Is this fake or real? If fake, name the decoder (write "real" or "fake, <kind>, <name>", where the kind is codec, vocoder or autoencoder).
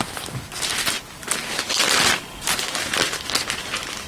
real